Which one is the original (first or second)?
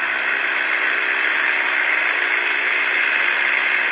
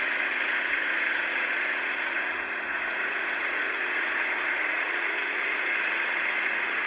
first